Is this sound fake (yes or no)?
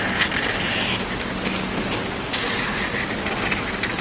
no